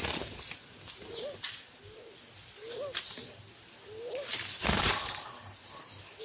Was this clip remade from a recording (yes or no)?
no